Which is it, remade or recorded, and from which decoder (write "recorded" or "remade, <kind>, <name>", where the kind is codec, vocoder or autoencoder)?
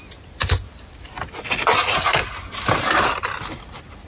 recorded